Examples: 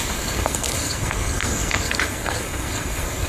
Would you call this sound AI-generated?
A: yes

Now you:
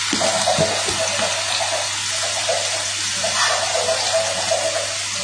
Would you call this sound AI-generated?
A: no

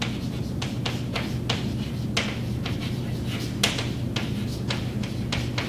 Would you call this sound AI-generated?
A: no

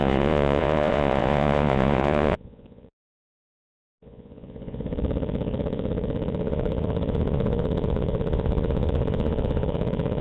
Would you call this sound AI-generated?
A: yes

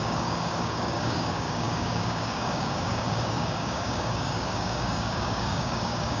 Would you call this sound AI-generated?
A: yes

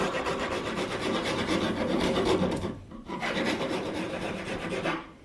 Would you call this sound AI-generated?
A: yes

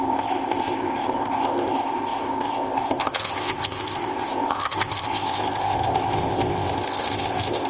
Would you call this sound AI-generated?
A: yes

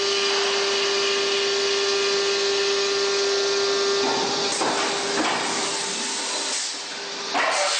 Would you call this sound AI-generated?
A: no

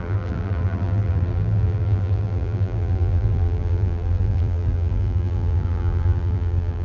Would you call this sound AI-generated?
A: yes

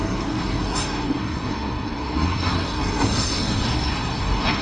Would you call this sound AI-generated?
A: yes